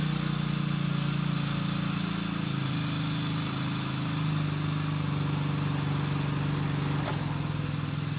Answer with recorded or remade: recorded